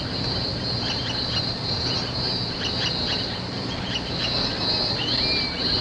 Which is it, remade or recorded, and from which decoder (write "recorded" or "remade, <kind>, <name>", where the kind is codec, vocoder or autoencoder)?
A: recorded